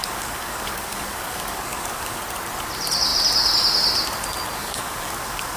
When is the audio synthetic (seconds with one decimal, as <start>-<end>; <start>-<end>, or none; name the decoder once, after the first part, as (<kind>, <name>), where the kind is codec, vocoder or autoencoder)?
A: 0.0-2.2 (codec, DAC); 4.6-5.6